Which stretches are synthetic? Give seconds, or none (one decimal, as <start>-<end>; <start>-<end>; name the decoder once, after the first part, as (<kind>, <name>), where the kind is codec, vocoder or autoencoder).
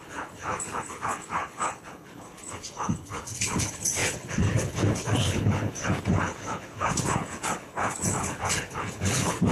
0.0-9.5 (codec, HILCodec)